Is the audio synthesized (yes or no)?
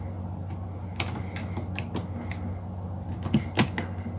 no